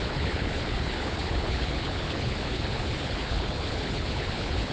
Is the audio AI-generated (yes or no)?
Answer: yes